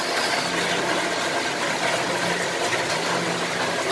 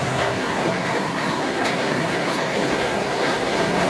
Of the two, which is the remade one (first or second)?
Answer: second